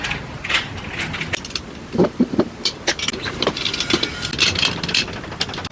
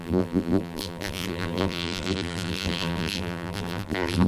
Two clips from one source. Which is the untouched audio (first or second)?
first